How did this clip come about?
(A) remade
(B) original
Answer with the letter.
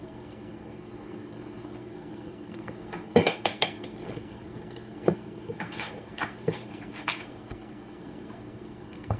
A